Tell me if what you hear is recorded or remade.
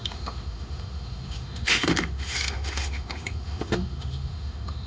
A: remade